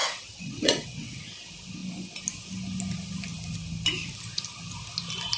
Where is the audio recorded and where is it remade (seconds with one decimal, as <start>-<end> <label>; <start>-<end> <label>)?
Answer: 0.0-1.2 remade; 1.2-5.4 recorded